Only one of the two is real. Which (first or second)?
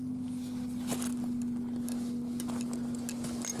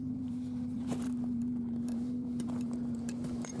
first